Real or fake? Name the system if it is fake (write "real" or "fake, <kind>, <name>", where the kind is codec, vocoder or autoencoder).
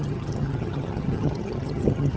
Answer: fake, vocoder, HiFi-GAN